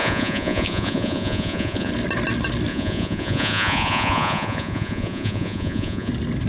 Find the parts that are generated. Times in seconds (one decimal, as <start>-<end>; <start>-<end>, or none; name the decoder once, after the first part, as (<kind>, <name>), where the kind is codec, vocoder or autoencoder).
0.0-1.9 (vocoder, Vocos); 2.7-6.1